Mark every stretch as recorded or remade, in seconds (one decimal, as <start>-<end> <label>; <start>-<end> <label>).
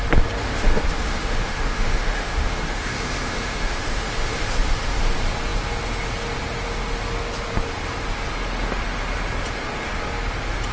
0.0-0.4 recorded; 0.4-5.1 remade; 5.1-10.7 recorded